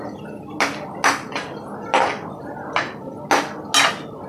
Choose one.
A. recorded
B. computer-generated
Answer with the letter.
A